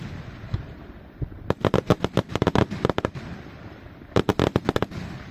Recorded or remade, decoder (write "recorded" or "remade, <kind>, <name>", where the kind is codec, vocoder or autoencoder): remade, vocoder, BigVGAN v2